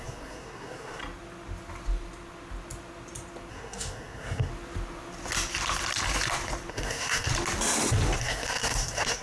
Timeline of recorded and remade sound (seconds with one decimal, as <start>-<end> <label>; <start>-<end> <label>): 0.0-1.0 remade; 1.0-3.5 recorded; 3.5-4.5 remade; 4.5-6.7 recorded; 6.7-7.3 remade; 7.3-8.2 recorded; 8.2-9.2 remade